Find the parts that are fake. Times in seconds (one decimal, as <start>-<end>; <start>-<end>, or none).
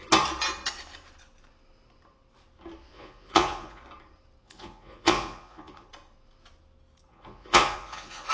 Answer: 2.9-3.8; 4.4-5.9; 7.1-8.3